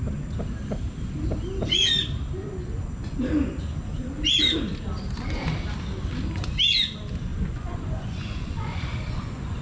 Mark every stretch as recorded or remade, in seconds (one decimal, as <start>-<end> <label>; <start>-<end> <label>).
0.0-7.3 recorded; 7.3-9.6 remade